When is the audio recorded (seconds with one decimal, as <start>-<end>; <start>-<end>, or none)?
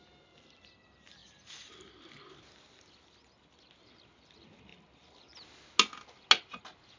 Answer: 0.0-1.2; 1.7-7.0